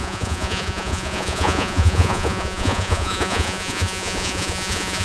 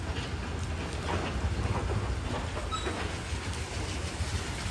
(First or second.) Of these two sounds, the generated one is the first